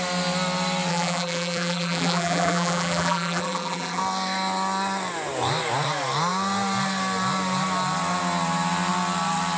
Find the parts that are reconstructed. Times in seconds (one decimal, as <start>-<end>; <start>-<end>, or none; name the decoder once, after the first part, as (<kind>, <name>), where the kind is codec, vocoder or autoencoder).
0.9-4.0 (vocoder, BigVGAN v2)